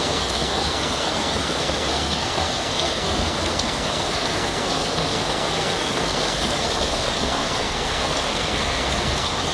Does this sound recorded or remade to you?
remade